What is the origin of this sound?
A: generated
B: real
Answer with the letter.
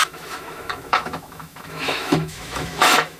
A